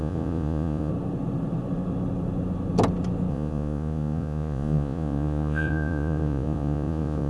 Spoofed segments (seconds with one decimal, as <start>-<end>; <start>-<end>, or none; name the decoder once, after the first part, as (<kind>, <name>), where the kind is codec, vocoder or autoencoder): 0.0-0.9 (vocoder, Vocos); 3.3-7.3